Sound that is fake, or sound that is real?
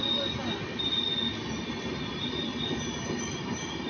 real